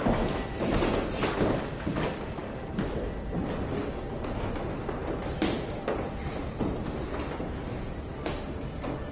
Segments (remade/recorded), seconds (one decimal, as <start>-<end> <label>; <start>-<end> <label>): 0.0-9.1 recorded